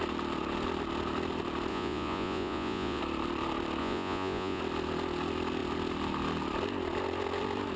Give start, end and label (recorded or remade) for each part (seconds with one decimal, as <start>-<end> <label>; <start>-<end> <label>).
0.0-1.7 recorded; 1.7-3.0 remade; 3.0-3.8 recorded; 3.8-4.6 remade; 4.6-7.8 recorded